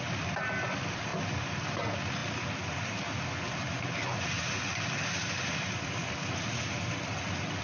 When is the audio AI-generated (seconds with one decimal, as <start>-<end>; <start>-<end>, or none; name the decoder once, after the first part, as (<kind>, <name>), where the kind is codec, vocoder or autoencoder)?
0.0-1.1 (vocoder, BigVGAN v2); 1.7-2.2; 5.8-7.6